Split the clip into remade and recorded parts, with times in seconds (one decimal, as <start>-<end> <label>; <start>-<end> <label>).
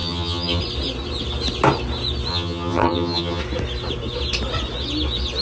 0.0-0.6 remade; 0.6-2.3 recorded; 2.3-3.4 remade; 3.4-5.4 recorded